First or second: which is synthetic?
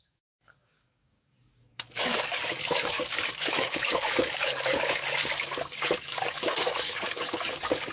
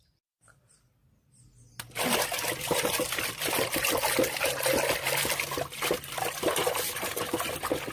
first